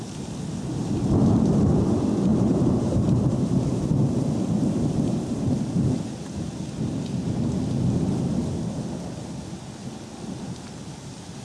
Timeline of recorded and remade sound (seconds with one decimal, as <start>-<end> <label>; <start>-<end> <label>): 0.0-2.3 recorded; 2.3-3.5 remade; 3.5-11.4 recorded